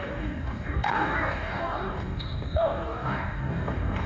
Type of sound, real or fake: fake